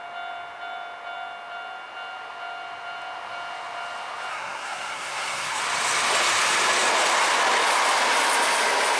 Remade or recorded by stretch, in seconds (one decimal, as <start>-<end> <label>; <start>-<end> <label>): 0.0-4.3 recorded; 4.3-5.6 remade; 5.6-9.0 recorded